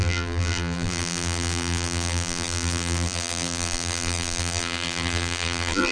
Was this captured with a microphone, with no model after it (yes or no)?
no